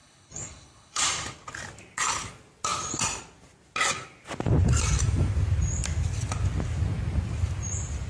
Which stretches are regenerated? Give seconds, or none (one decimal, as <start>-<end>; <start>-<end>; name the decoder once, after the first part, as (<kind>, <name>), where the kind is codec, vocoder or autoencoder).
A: 0.0-1.0 (codec, HILCodec)